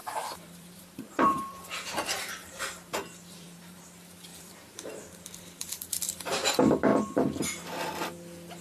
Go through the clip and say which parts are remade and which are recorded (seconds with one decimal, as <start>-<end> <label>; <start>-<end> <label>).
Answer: 0.0-3.8 remade; 3.8-4.3 recorded; 4.3-6.5 remade; 6.5-8.6 recorded